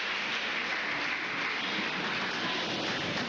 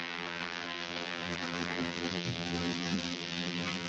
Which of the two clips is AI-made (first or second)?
second